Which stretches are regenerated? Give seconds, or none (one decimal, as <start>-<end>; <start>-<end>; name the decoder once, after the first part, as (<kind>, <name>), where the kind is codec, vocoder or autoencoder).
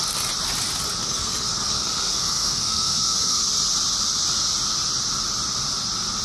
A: 1.0-3.4 (codec, SNAC)